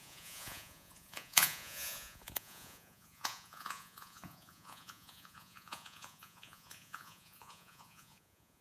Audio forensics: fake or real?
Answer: fake